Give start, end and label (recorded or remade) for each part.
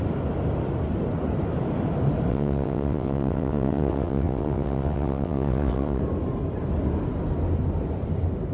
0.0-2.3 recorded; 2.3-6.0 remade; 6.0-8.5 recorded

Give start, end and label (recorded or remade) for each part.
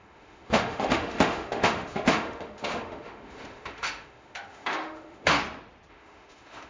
0.0-5.4 remade; 5.4-5.9 recorded; 5.9-6.7 remade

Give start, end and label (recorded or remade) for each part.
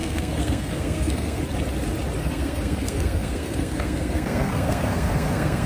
0.0-1.4 remade; 1.4-2.2 recorded; 2.2-5.7 remade